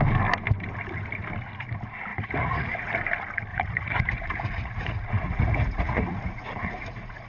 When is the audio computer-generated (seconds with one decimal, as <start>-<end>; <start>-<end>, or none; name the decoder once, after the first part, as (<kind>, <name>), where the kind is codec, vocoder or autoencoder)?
2.1-2.9 (vocoder, Vocos); 3.5-7.3

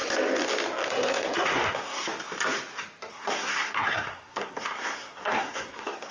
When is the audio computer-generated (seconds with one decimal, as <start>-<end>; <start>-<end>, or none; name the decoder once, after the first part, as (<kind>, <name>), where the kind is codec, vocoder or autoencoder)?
0.9-2.1 (codec, SNAC); 3.1-6.1

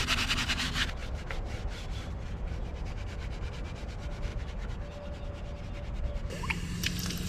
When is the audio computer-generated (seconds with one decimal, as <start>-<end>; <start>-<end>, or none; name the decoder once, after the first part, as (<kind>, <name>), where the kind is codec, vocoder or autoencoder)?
none

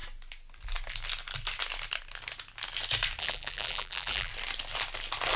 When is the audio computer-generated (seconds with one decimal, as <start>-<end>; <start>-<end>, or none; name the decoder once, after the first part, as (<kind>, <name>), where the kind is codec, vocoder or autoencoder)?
3.2-4.3 (vocoder, BigVGAN v2)

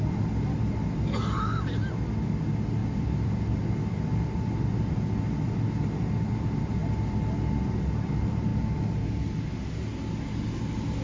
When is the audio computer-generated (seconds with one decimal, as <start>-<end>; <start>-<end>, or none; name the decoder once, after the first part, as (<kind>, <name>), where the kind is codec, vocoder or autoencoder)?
none